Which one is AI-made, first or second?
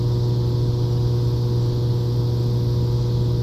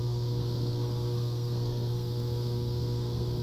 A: second